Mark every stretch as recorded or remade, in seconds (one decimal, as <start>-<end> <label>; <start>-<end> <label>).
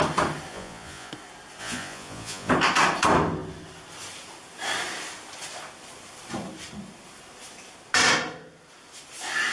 0.0-0.5 recorded; 0.5-1.1 remade; 1.1-1.6 recorded; 1.6-2.5 remade; 2.5-9.5 recorded